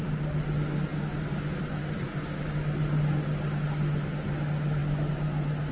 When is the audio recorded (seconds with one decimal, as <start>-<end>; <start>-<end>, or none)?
0.0-5.7